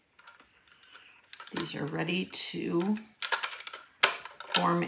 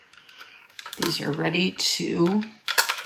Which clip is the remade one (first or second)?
second